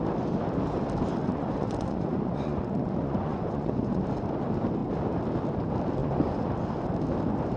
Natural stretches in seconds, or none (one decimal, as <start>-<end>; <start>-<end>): 0.0-1.2; 4.0-6.0; 6.5-7.6